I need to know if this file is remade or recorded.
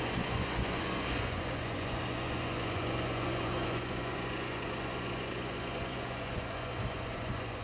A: remade